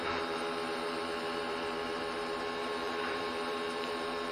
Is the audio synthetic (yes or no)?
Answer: yes